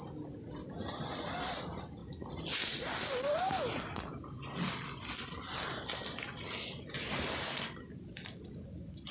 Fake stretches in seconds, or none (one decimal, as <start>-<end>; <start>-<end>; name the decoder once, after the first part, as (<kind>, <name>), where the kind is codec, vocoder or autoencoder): none